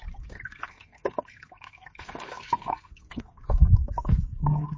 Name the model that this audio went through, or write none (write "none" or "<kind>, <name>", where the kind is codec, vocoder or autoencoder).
codec, SNAC